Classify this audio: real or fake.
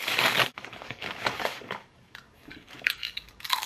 fake